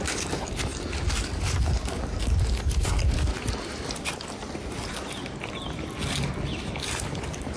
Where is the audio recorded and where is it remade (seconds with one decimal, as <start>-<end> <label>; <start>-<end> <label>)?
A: 0.0-3.3 remade; 3.3-6.9 recorded; 6.9-7.6 remade